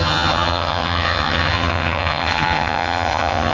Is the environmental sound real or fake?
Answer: fake